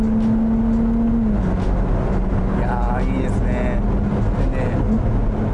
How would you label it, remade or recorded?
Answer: recorded